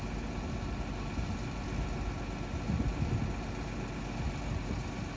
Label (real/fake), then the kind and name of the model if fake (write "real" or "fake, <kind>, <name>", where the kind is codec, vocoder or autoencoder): real